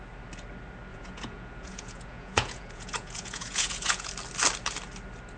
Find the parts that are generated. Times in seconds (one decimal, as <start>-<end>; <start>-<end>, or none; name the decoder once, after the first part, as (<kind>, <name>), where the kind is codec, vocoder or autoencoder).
0.9-4.1 (vocoder, Vocos)